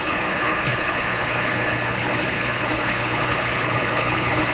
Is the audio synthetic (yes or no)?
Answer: yes